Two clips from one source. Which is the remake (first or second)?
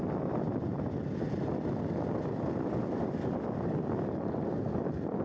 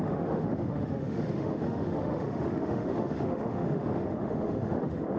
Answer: second